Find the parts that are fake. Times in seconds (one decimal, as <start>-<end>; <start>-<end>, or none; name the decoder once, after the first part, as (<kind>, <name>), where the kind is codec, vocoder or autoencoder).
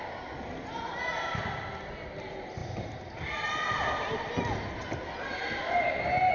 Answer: none